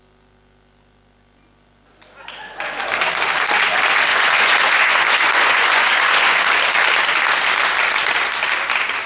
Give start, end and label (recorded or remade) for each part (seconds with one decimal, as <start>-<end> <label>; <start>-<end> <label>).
0.0-4.1 recorded; 4.1-6.4 remade; 6.4-9.1 recorded